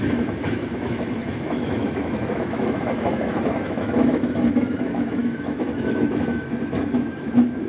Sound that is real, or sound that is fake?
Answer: fake